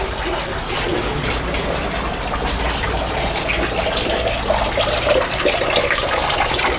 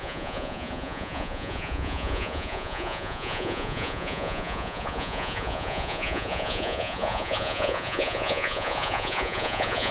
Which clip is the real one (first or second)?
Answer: first